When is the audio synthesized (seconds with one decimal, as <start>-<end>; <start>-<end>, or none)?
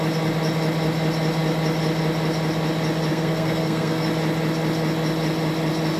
3.1-4.1